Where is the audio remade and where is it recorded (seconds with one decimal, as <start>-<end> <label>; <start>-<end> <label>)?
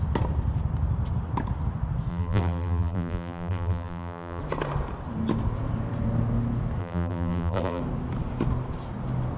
0.0-2.1 recorded; 2.1-4.4 remade; 4.4-6.8 recorded; 6.8-7.8 remade; 7.8-9.4 recorded